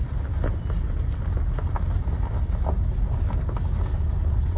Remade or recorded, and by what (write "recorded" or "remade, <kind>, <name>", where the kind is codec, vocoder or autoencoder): recorded